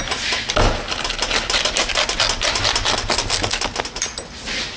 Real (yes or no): yes